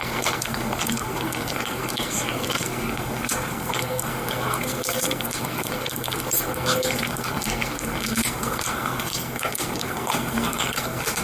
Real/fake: fake